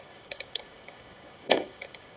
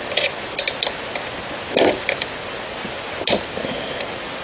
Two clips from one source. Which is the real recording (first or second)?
second